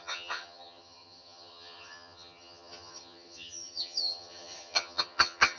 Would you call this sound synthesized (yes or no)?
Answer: yes